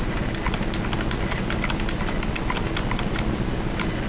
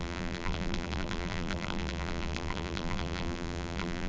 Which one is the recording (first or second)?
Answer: first